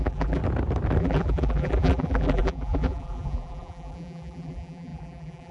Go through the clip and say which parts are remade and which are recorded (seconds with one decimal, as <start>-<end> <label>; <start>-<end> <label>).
0.0-0.4 remade; 0.4-1.0 recorded; 1.0-5.5 remade